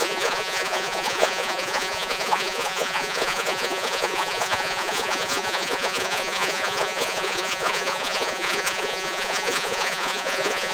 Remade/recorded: remade